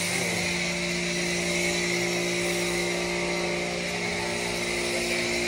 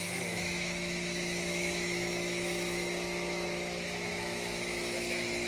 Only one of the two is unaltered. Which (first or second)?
first